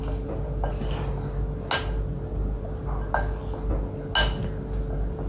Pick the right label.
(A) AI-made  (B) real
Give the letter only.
B